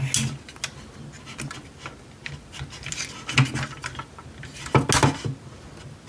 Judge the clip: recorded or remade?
recorded